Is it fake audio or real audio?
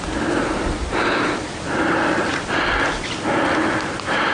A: real